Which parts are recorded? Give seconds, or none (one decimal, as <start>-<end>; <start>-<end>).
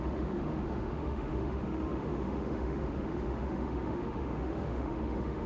none